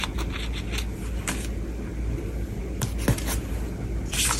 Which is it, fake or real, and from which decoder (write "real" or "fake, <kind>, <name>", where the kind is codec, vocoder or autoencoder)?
real